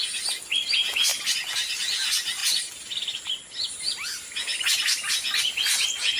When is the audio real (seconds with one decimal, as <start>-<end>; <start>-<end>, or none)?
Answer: 0.0-6.2